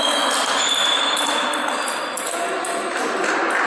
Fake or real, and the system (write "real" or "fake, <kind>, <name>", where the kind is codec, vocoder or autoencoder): real